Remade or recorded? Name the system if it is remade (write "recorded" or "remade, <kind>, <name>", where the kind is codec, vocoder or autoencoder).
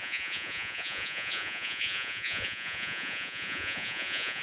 remade, vocoder, Vocos